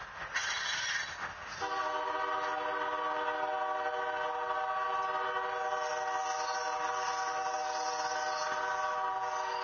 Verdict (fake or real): real